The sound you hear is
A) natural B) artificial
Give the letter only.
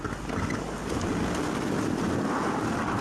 A